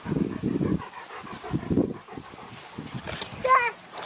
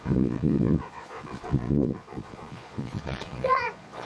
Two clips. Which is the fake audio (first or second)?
second